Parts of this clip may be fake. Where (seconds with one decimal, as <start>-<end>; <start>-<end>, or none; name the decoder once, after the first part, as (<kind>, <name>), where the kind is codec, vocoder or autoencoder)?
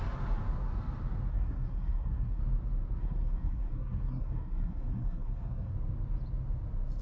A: 1.3-2.4 (codec, SNAC); 3.0-5.7